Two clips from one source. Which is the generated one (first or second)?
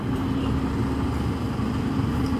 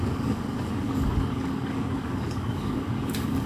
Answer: second